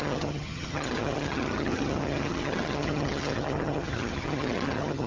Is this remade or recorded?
remade